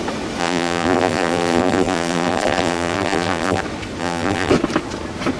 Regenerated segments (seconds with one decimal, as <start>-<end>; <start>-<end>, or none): 0.4-3.6; 4.0-4.5

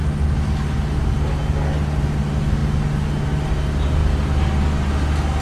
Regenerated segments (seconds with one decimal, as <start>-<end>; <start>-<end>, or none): none

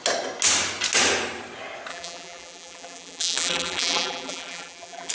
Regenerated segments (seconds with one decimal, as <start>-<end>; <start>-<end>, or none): 1.9-5.1

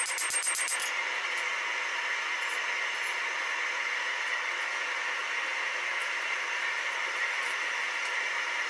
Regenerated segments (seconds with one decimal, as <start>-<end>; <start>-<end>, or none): 6.0-8.7

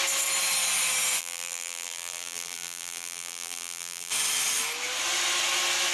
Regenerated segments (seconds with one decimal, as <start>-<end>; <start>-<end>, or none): 1.2-4.1